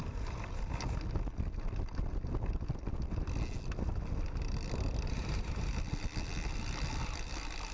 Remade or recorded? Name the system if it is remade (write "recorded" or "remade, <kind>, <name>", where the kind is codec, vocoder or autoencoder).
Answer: recorded